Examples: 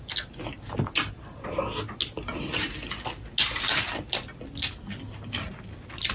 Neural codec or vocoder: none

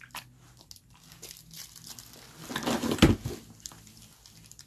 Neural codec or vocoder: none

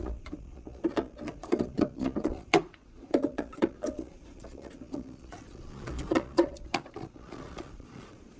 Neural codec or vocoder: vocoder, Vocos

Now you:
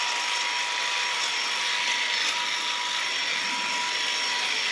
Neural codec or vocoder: none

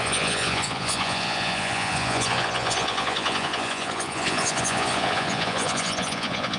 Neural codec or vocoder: vocoder, Vocos